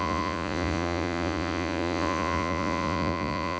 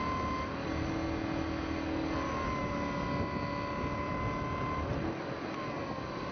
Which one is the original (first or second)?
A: second